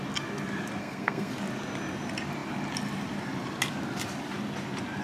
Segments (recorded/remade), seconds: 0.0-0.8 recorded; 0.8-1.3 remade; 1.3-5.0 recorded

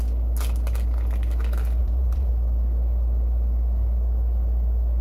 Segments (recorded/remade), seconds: 0.0-1.8 recorded; 1.8-2.3 remade; 2.3-5.0 recorded

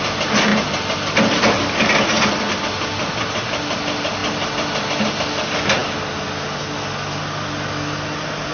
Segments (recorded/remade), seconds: 0.0-8.5 recorded

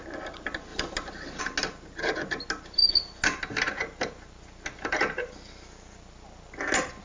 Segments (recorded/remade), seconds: 0.0-7.0 recorded